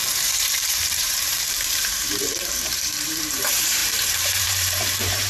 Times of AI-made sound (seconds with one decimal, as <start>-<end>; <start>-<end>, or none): 0.0-5.3